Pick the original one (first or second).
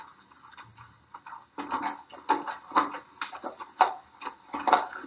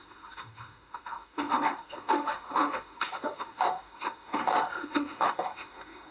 first